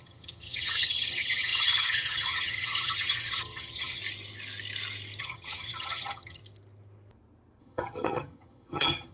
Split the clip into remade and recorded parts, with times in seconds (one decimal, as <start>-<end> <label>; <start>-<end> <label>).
0.0-4.0 remade; 4.0-5.2 recorded; 5.2-6.4 remade; 6.4-7.6 recorded; 7.6-9.1 remade